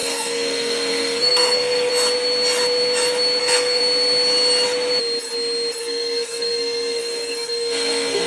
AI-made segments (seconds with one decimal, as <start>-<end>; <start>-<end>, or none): 0.0-1.9; 3.4-3.8; 5.8-8.3

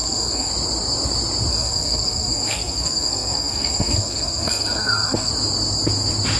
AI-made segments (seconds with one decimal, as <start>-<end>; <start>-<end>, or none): 0.0-0.5; 1.5-5.3